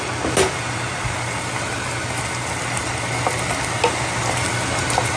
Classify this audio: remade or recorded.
recorded